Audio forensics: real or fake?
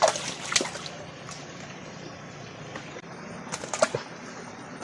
real